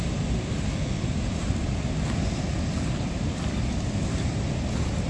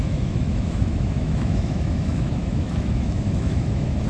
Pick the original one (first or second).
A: first